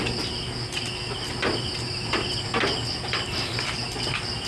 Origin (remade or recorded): recorded